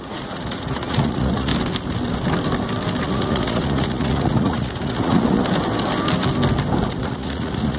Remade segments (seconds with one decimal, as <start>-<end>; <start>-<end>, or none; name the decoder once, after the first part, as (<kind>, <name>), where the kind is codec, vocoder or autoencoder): 0.0-1.5 (vocoder, Vocos); 3.0-5.4; 7.0-7.8